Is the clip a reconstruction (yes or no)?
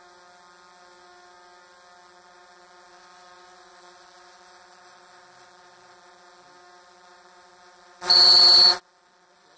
no